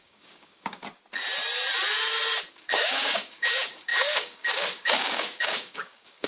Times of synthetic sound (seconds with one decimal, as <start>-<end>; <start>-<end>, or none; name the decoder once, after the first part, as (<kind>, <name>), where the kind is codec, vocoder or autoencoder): 0.0-0.8 (codec, DAC); 2.5-6.3